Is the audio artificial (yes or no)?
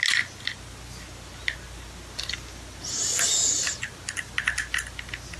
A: no